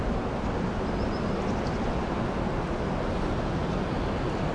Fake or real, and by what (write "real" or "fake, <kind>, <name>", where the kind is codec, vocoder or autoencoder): real